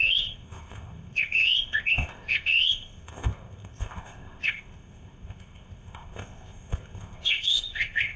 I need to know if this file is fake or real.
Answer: fake